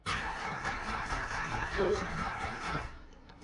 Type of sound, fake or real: fake